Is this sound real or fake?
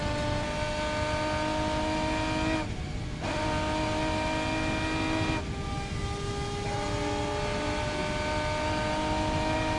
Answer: real